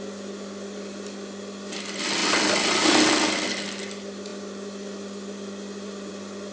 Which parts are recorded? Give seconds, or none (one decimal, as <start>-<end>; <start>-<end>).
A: 0.0-6.5